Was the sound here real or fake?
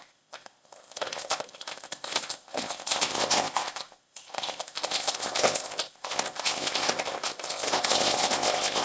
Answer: fake